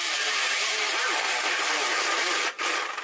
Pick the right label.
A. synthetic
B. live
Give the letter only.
A